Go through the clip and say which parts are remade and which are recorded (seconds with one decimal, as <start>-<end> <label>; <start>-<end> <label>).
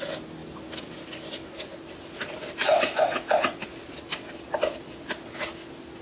0.0-2.7 recorded; 2.7-3.3 remade; 3.3-6.0 recorded